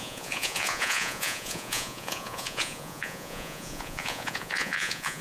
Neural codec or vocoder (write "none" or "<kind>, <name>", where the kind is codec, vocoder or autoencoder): vocoder, Vocos